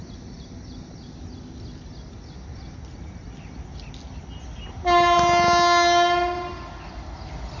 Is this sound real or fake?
real